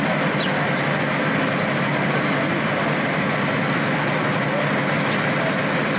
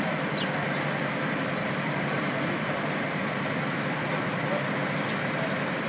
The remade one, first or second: second